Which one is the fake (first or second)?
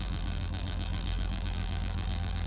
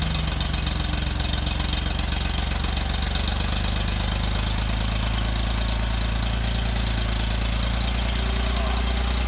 first